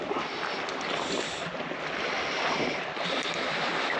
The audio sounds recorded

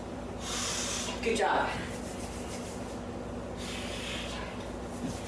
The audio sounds recorded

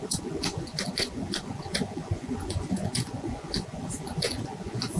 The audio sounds remade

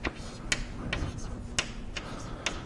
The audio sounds recorded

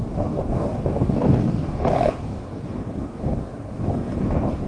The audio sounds remade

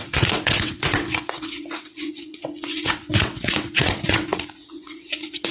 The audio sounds remade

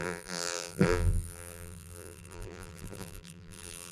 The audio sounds remade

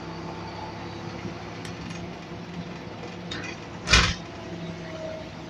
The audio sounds recorded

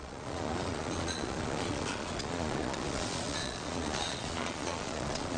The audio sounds remade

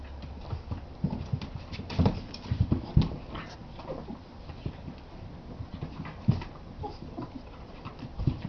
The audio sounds recorded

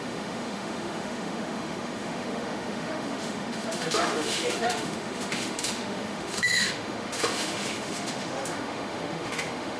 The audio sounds remade